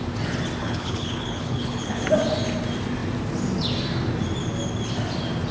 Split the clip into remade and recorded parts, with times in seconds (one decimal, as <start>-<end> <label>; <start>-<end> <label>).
0.0-0.6 recorded; 0.6-2.0 remade; 2.0-5.5 recorded